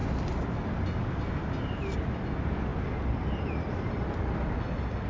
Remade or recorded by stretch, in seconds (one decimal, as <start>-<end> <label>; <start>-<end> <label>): 0.0-5.1 recorded